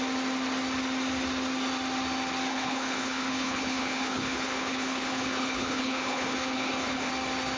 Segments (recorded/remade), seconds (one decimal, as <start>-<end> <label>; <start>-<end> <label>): 0.0-2.5 recorded; 2.5-7.1 remade; 7.1-7.6 recorded